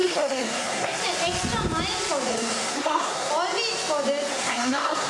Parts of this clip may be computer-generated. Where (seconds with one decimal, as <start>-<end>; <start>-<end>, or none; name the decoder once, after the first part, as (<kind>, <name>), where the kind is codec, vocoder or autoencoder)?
0.0-1.0 (codec, SNAC); 2.3-3.3; 4.3-5.1

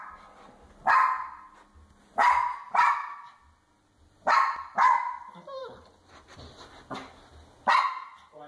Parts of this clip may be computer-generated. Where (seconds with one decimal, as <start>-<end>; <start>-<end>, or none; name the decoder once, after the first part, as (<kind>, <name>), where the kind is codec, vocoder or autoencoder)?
none

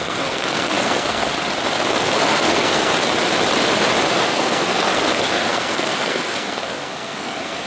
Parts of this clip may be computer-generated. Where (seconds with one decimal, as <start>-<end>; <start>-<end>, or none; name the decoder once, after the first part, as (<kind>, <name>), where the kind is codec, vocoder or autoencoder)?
0.0-1.3 (codec, SNAC); 1.9-2.9; 4.1-7.7

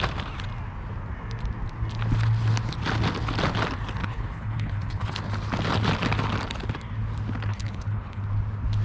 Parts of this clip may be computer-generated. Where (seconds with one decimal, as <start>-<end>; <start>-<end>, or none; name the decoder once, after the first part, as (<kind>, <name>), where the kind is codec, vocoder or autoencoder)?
4.0-5.1 (codec, HILCodec); 7.5-8.2

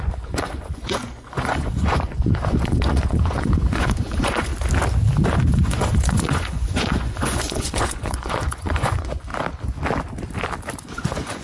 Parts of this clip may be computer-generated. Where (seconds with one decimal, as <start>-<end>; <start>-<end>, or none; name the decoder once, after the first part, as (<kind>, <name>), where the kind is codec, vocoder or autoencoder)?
0.0-4.5 (vocoder, Vocos); 5.3-9.3; 10.8-11.4

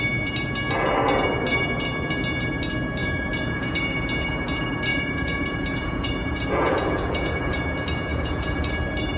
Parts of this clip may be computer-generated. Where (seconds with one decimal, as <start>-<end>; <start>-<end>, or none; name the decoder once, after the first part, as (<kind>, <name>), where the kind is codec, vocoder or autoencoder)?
3.0-3.8 (vocoder, Vocos); 4.9-7.6; 8.1-8.7

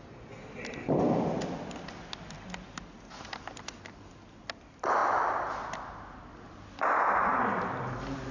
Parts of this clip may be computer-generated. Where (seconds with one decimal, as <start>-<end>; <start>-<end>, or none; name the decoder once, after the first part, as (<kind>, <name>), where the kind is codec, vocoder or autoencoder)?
none